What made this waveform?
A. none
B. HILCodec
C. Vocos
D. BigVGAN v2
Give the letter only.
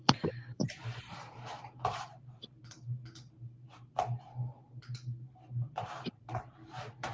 D